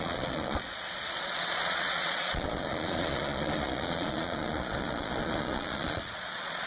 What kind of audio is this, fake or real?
fake